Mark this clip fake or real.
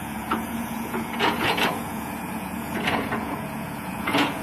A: fake